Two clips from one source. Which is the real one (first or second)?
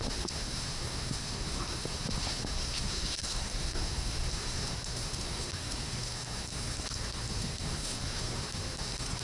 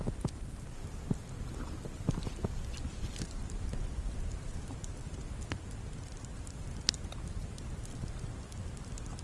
second